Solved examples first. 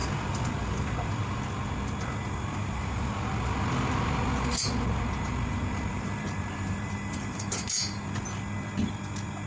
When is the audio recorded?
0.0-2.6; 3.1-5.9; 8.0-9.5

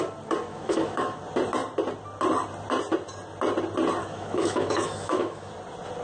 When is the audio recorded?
0.0-0.5; 1.2-4.0; 5.5-6.0

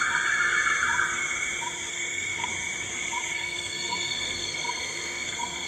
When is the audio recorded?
0.0-1.9; 2.5-3.4

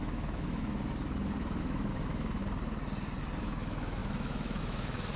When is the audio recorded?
0.7-1.6; 2.4-3.4

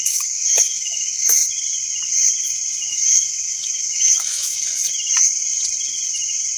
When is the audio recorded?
1.4-2.9; 4.8-6.6

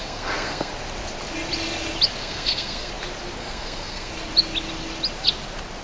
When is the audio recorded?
0.7-2.2; 2.9-3.4; 4.1-5.8